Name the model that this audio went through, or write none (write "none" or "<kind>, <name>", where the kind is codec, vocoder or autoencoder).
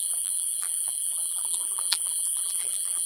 vocoder, BigVGAN v2